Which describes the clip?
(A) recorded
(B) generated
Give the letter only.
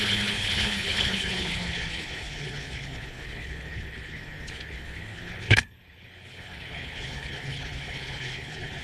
B